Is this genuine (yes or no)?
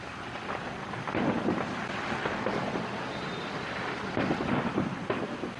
yes